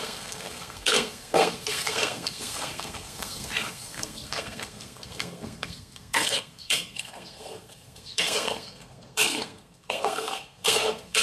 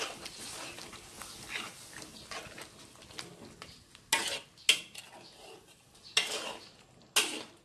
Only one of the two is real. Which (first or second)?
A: second